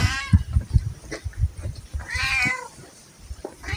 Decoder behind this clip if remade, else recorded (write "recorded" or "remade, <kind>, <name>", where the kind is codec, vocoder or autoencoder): remade, vocoder, BigVGAN v2